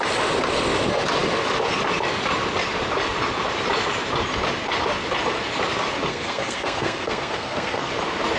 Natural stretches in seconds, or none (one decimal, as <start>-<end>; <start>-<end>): 0.0-6.1; 7.9-8.4